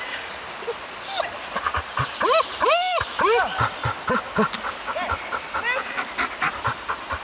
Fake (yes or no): no